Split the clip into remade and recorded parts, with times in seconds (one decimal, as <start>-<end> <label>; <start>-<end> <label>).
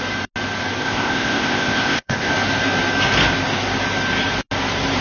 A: 0.0-0.8 recorded; 0.8-2.3 remade; 2.3-5.0 recorded